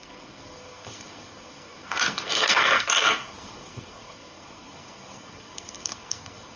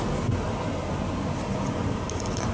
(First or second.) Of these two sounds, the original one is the second